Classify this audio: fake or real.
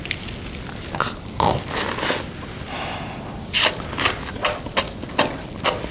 real